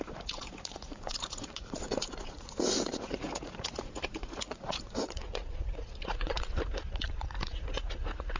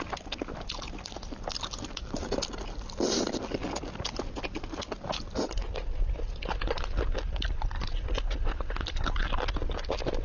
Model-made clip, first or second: first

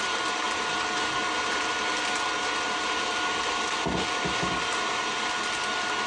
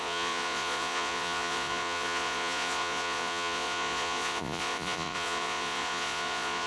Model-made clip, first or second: second